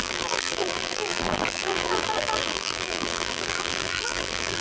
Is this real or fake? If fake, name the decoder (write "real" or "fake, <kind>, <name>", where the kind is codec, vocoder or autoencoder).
fake, vocoder, BigVGAN v2